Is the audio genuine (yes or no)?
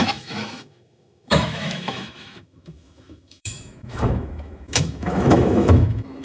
no